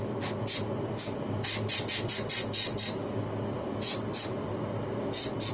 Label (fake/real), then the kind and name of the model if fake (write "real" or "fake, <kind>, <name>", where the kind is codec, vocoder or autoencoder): real